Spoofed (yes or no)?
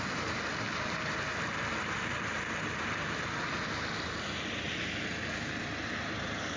no